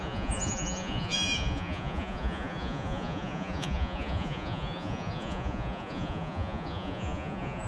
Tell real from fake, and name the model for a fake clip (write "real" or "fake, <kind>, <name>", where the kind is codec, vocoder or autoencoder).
fake, vocoder, Vocos